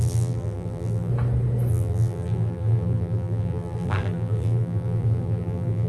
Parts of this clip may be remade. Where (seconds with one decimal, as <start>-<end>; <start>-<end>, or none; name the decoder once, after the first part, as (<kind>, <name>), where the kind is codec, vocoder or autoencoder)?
0.0-1.1 (vocoder, BigVGAN v2); 1.7-5.9